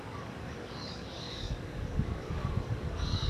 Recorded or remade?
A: remade